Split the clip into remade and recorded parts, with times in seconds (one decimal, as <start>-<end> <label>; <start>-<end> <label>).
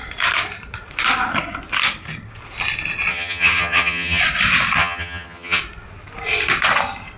0.0-3.1 recorded; 3.1-4.2 remade; 4.2-4.8 recorded; 4.8-5.6 remade; 5.6-7.2 recorded